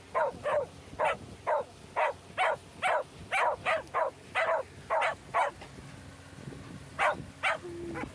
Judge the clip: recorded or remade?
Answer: recorded